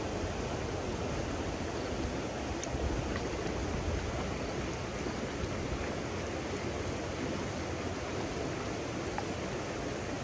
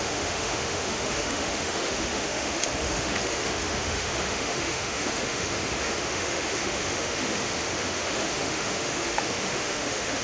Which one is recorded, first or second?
first